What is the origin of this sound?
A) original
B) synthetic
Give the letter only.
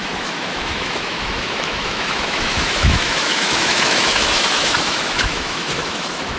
B